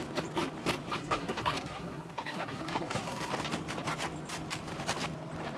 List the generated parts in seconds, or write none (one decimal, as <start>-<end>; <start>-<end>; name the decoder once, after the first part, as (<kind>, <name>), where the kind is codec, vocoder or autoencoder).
1.0-3.3 (codec, SNAC)